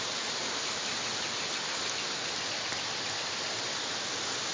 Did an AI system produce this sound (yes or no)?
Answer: no